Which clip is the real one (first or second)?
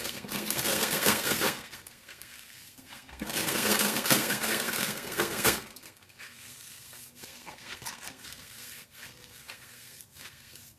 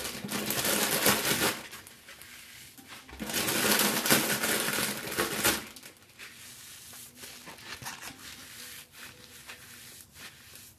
second